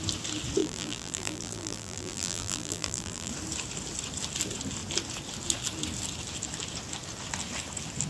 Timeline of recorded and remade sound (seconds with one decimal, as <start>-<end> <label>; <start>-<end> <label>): 0.0-0.6 recorded; 0.6-3.3 remade; 3.3-8.1 recorded